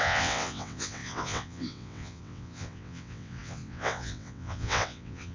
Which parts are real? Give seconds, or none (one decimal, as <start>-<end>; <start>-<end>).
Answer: none